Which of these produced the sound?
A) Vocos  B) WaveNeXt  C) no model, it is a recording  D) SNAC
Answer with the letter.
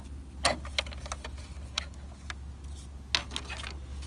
C